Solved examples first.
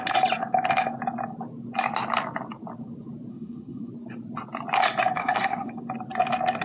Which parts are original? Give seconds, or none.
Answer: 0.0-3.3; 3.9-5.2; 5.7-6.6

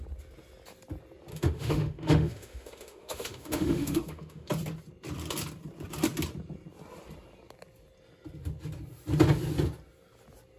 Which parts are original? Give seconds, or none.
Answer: 0.0-1.3; 4.5-10.6

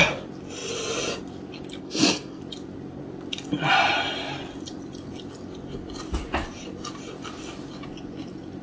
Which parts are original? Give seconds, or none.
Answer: 0.0-1.8; 2.4-8.6